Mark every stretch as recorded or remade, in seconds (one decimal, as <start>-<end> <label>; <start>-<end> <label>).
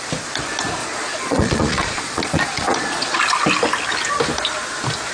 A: 0.0-0.8 recorded; 0.8-3.2 remade; 3.2-5.1 recorded